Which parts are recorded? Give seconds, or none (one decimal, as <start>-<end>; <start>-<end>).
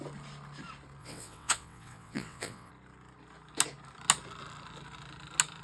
0.0-1.0; 2.7-5.6